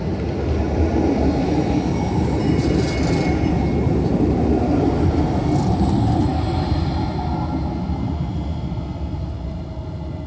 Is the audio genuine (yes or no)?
yes